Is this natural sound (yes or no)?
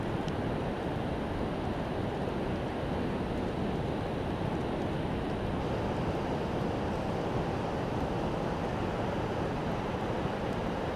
yes